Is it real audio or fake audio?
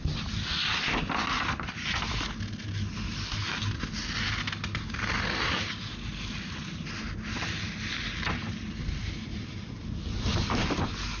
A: real